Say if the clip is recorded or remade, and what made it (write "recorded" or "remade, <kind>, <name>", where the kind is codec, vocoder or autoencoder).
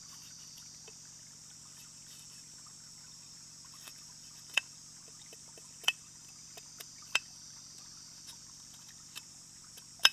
remade, vocoder, BigVGAN v2